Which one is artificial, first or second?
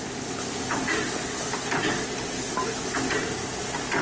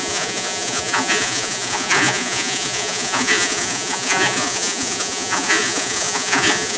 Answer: second